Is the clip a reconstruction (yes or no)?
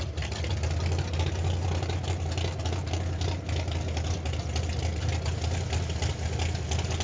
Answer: no